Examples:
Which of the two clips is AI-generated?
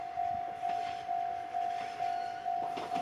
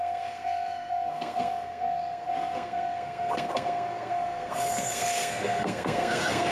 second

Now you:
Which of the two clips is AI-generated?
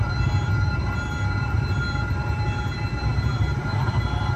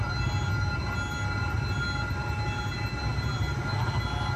first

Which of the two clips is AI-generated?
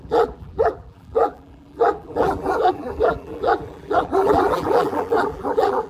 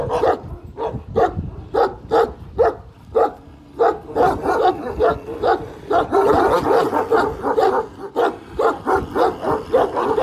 first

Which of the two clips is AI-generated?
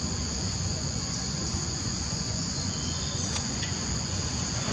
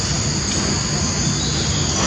first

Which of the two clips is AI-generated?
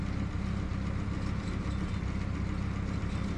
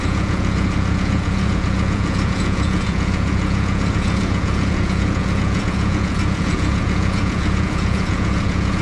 second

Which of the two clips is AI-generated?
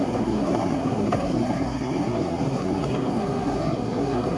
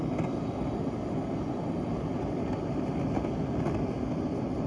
first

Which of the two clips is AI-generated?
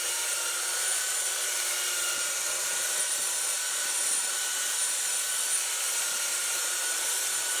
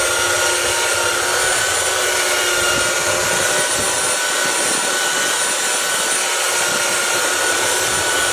first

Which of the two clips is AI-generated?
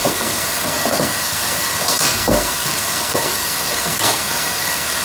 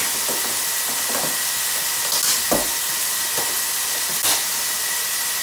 first